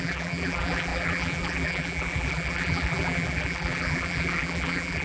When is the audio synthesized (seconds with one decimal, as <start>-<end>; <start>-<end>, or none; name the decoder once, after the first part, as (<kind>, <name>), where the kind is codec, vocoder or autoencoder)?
0.0-5.0 (vocoder, BigVGAN v2)